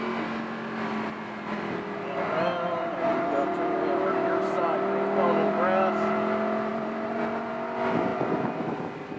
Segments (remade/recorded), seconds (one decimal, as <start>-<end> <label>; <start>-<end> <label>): 0.0-6.7 recorded; 6.7-7.5 remade; 7.5-8.1 recorded; 8.1-9.2 remade